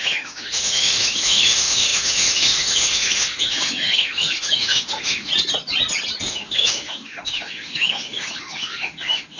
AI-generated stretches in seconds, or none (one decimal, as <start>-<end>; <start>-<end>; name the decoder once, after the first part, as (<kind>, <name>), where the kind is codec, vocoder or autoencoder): 0.0-5.3 (autoencoder, DAC-VAE); 6.3-9.4